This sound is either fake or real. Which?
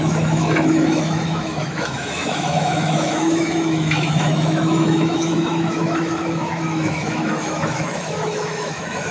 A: fake